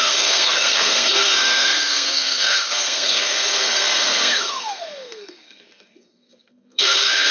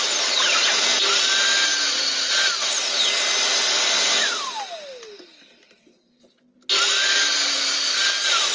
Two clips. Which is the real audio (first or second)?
second